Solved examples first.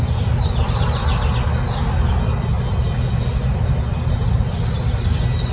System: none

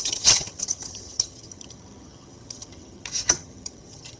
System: vocoder, HiFi-GAN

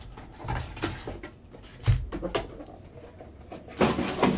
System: none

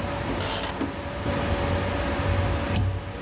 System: none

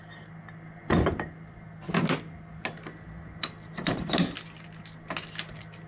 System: none